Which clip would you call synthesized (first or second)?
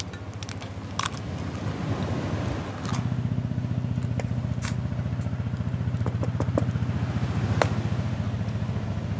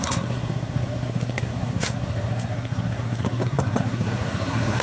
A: second